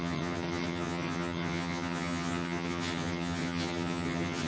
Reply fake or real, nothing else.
fake